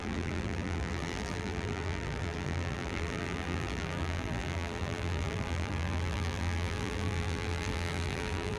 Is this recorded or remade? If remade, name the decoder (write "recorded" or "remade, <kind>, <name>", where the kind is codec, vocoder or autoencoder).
remade, vocoder, BigVGAN v2